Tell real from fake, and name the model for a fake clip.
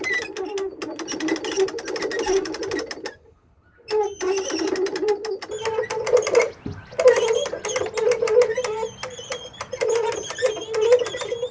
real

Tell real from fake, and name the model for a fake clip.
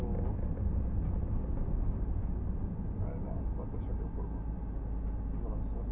real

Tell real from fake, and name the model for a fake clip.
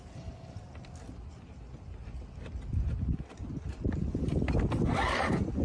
real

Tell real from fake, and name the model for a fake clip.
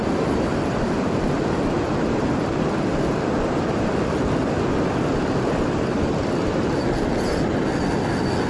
real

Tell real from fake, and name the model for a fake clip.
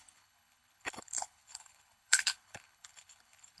fake, codec, HILCodec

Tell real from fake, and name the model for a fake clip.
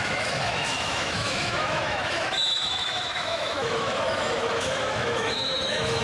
fake, autoencoder, DAC-VAE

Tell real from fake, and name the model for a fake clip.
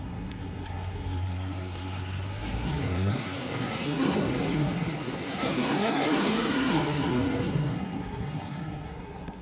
fake, codec, SNAC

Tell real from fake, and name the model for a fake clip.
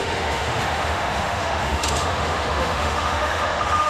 fake, autoencoder, DAC-VAE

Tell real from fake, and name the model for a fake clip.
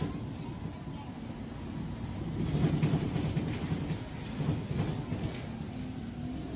real